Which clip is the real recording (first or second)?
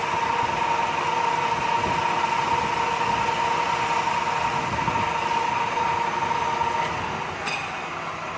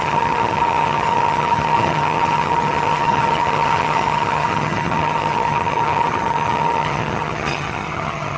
first